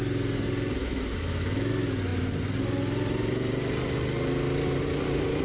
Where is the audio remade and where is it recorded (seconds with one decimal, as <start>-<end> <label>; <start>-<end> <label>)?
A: 0.0-0.8 recorded; 0.8-1.7 remade; 1.7-5.4 recorded